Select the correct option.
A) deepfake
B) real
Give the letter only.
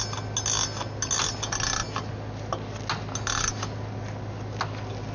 B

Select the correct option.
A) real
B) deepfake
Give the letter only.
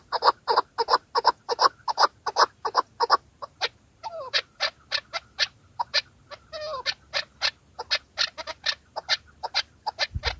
A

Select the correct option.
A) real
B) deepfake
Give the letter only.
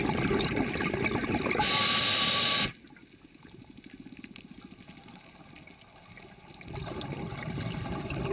A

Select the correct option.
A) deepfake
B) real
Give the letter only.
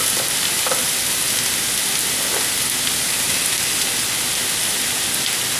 B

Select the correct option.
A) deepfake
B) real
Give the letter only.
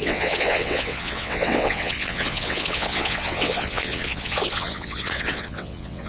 A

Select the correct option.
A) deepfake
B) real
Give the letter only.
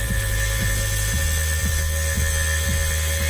B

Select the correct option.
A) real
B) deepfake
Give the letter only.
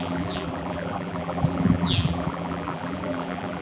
B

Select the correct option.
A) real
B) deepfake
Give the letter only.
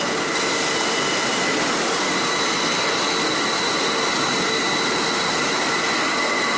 A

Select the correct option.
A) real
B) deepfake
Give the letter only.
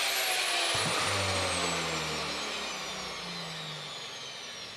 A